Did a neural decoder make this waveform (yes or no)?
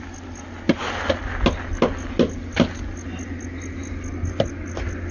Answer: no